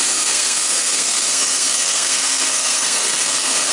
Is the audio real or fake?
fake